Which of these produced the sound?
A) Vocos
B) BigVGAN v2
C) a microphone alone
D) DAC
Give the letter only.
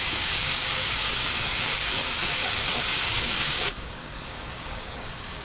D